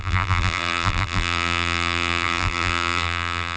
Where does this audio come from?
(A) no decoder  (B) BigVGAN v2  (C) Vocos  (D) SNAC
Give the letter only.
B